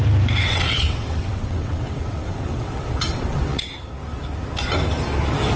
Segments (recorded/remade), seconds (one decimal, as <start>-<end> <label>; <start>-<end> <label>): 0.0-0.5 recorded; 0.5-3.9 remade; 3.9-5.6 recorded